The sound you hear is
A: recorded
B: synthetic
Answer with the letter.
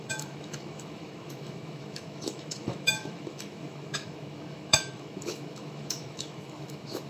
B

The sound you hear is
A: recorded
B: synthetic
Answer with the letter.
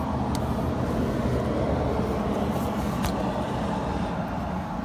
A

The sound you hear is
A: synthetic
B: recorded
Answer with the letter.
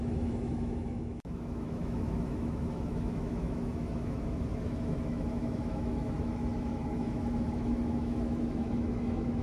A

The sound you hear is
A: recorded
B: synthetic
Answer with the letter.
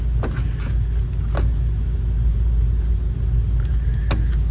A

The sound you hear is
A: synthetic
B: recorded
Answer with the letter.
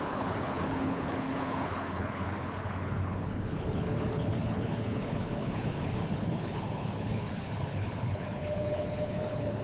A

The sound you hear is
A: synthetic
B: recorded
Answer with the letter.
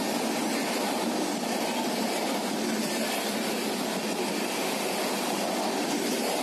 B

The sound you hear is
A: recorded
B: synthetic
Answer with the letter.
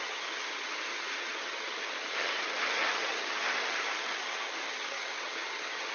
B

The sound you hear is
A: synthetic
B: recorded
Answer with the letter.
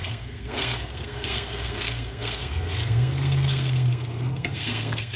A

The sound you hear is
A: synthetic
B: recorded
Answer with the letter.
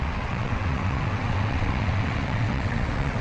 A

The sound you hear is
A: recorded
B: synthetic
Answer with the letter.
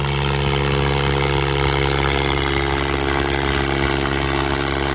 A